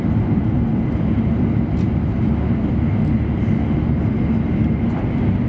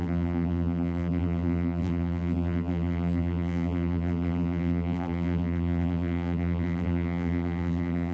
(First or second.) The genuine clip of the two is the first